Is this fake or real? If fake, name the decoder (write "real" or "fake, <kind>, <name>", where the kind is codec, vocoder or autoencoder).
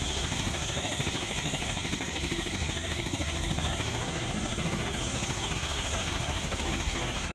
fake, codec, SNAC